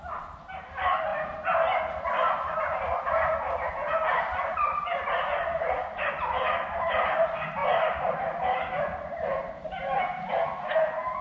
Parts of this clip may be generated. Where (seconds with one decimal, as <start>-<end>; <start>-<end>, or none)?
none